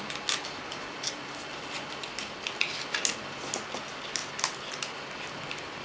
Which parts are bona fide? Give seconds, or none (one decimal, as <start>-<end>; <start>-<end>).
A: 0.0-5.8